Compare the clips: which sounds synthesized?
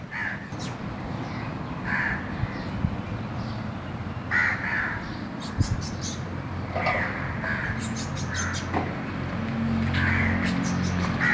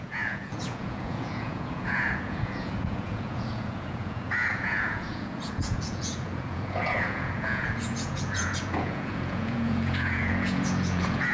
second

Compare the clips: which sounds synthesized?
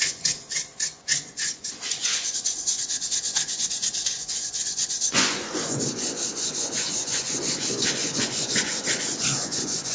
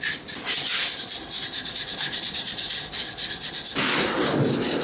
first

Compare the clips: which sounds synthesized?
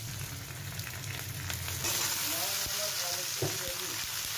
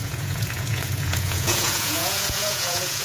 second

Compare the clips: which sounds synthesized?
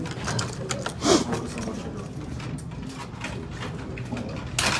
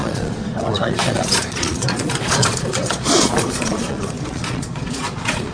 second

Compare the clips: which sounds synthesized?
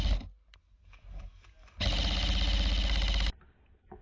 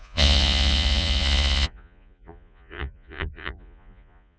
second